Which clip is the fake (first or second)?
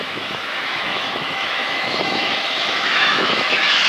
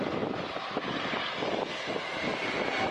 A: first